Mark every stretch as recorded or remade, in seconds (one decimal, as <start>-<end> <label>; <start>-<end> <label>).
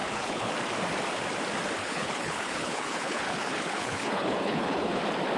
0.0-0.5 remade; 0.5-1.8 recorded; 1.8-5.0 remade; 5.0-5.4 recorded